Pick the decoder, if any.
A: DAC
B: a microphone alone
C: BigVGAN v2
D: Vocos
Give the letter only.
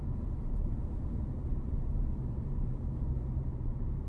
C